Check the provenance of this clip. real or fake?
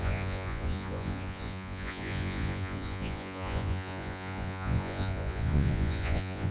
fake